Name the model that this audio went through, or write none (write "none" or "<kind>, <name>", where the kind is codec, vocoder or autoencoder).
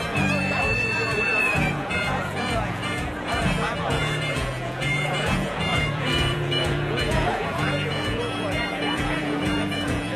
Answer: vocoder, Vocos